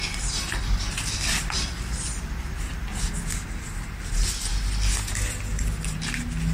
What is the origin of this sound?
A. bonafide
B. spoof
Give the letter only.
A